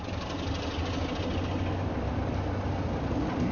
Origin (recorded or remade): recorded